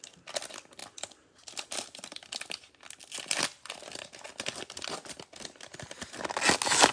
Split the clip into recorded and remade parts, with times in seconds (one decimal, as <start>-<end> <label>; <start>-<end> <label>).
0.0-6.9 recorded